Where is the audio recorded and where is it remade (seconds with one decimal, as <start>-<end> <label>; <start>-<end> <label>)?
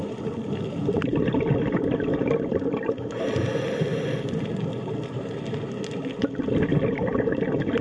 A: 0.0-2.5 recorded; 2.5-4.5 remade; 4.5-7.8 recorded